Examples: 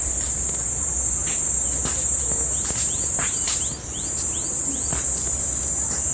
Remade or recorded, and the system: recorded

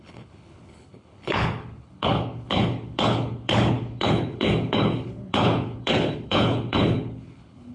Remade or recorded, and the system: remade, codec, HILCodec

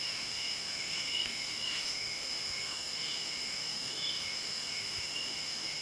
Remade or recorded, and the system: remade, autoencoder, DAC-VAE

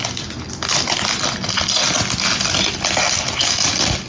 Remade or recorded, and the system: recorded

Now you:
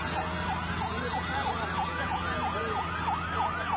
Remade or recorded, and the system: recorded